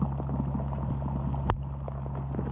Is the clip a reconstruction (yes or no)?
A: no